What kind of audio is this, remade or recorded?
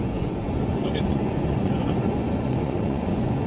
remade